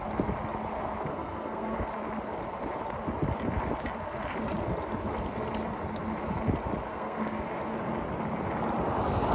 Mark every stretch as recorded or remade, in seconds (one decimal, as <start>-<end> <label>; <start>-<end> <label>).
0.0-1.1 recorded; 1.1-1.9 remade; 1.9-6.9 recorded; 6.9-7.4 remade; 7.4-9.3 recorded